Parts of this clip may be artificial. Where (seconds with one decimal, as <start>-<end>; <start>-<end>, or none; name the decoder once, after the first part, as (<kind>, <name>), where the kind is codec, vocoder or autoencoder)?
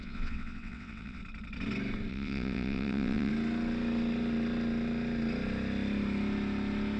0.0-1.2 (vocoder, WaveNeXt); 2.1-3.3